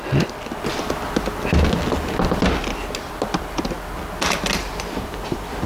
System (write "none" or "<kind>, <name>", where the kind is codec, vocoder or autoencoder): none